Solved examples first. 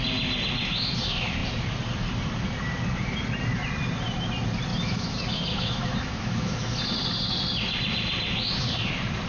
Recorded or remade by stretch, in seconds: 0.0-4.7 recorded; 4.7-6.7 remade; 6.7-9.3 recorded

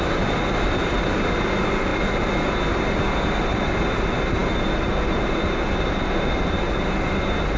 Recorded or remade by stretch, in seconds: 0.0-7.6 recorded

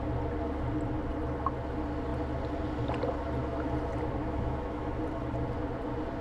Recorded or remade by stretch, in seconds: 0.0-4.2 recorded; 4.2-5.0 remade; 5.0-6.2 recorded

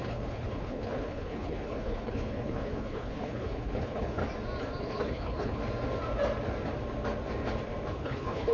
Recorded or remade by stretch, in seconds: 0.0-4.2 remade; 4.2-4.8 recorded; 4.8-5.6 remade; 5.6-7.9 recorded; 7.9-8.5 remade

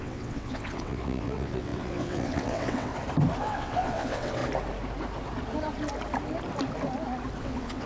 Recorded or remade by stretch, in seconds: 0.0-2.9 remade; 2.9-3.4 recorded; 3.4-4.4 remade; 4.4-7.4 recorded; 7.4-7.9 remade